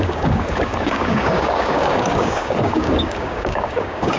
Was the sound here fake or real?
fake